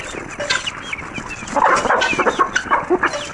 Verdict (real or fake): real